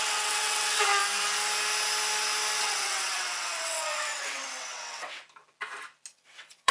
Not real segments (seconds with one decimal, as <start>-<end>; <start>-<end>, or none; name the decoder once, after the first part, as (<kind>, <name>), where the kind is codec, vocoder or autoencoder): 0.0-1.0 (vocoder, WaveNeXt); 2.6-5.2; 6.1-6.7